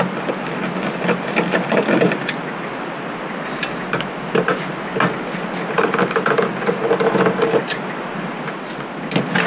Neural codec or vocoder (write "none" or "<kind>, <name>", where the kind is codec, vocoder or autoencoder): none